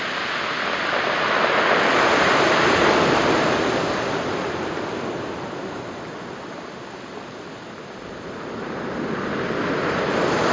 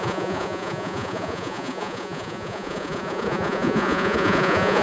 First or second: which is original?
first